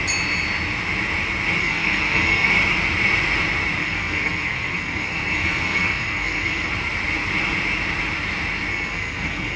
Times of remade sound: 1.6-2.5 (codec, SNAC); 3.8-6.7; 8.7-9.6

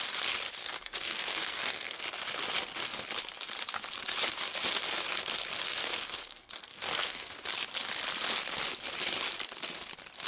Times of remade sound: 0.6-2.0 (codec, SNAC); 5.8-7.4

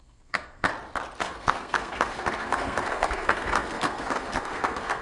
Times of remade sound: 0.0-0.7 (codec, SNAC); 1.2-5.0